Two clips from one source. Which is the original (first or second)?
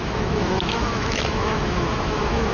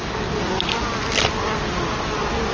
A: second